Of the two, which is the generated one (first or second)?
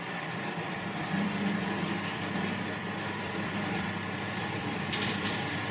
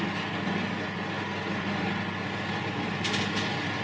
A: first